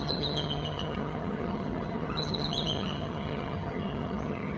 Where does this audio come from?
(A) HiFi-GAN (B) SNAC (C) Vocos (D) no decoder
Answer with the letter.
A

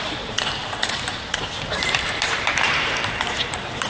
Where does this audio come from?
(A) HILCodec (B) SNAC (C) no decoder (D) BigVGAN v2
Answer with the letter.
D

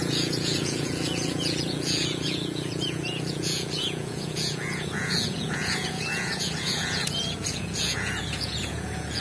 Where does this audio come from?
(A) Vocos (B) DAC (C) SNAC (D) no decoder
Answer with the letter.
A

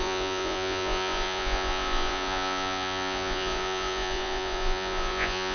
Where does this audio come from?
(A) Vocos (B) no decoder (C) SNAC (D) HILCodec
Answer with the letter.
A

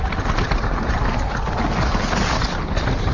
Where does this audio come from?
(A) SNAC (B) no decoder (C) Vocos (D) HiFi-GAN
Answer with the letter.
B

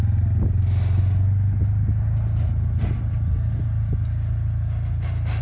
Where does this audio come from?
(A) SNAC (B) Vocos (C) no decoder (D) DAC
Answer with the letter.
C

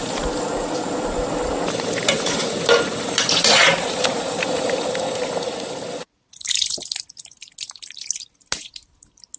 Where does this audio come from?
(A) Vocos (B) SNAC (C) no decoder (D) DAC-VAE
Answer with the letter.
C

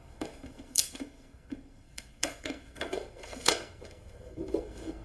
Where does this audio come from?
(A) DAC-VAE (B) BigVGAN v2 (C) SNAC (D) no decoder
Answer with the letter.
C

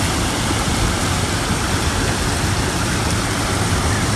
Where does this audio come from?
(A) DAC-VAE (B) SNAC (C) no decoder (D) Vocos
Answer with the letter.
C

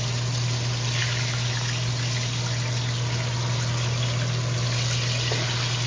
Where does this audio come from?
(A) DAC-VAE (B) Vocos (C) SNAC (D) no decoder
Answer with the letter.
D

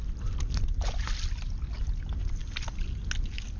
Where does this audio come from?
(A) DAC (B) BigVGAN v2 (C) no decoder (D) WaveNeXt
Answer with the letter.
C